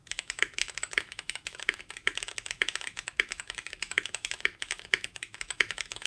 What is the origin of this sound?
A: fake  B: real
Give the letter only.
A